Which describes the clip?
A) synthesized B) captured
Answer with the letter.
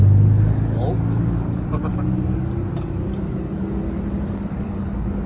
A